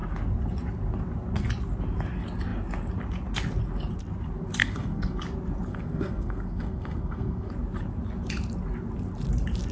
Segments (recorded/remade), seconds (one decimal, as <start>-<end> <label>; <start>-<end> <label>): 0.0-4.6 recorded; 4.6-5.2 remade; 5.2-5.7 recorded; 5.7-7.5 remade; 7.5-9.7 recorded